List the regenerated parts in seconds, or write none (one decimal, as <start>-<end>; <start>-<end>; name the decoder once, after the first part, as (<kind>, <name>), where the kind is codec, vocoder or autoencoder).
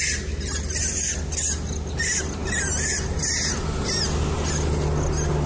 none